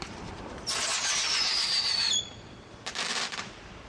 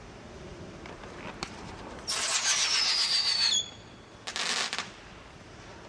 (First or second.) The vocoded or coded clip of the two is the first